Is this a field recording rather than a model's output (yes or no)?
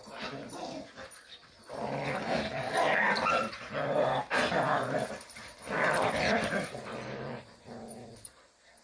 no